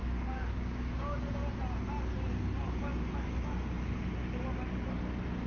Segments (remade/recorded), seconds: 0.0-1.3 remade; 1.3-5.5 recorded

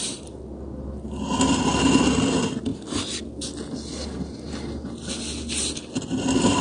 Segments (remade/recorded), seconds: 0.0-6.6 recorded

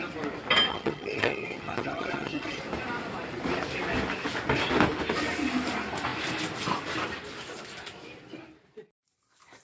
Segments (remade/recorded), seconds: 0.0-0.7 recorded; 0.7-2.6 remade; 2.6-9.6 recorded

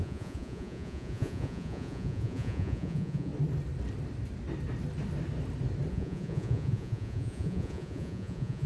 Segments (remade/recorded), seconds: 0.0-3.3 remade; 3.3-5.9 recorded; 5.9-8.7 remade